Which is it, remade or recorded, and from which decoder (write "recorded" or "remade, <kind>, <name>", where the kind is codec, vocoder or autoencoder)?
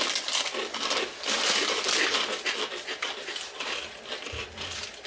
recorded